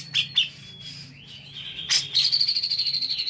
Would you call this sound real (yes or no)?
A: yes